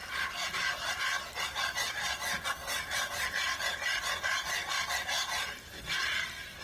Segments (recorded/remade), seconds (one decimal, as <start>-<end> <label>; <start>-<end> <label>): 0.0-6.6 recorded